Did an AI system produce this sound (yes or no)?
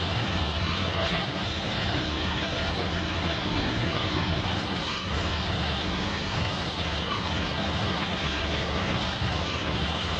yes